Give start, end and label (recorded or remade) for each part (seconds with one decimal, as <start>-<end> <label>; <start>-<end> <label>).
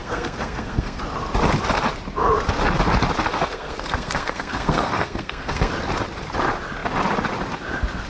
0.0-1.0 remade; 1.0-3.3 recorded; 3.3-5.7 remade; 5.7-8.1 recorded